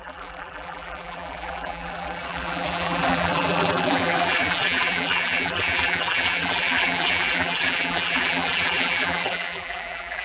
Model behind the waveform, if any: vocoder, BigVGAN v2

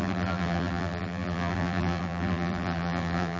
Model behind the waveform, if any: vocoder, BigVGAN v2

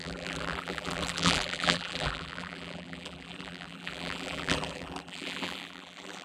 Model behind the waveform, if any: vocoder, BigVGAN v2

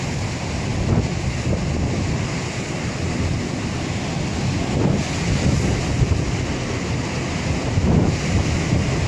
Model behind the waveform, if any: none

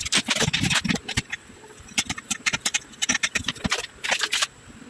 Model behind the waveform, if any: vocoder, BigVGAN v2